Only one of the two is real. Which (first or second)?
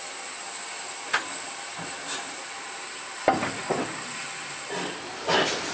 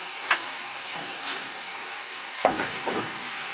first